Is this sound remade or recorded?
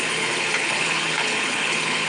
remade